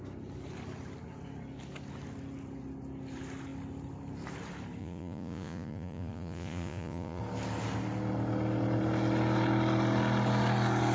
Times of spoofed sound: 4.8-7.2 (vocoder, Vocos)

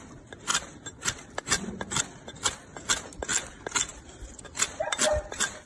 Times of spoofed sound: 0.5-2.0 (vocoder, BigVGAN v2); 3.9-5.7

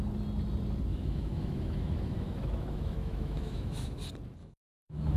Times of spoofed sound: 0.9-4.0 (autoencoder, DAC-VAE); 4.4-5.2

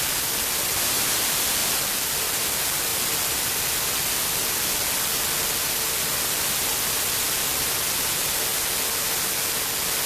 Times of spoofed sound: 0.0-1.6 (vocoder, BigVGAN v2); 2.1-8.5

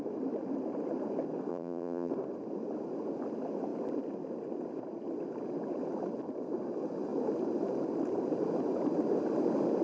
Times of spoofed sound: 1.5-2.1 (vocoder, BigVGAN v2)

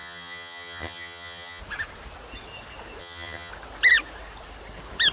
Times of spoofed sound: 0.0-1.6 (vocoder, HiFi-GAN); 3.0-3.5